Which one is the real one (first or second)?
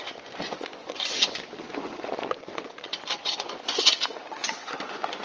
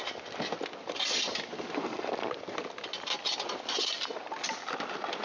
second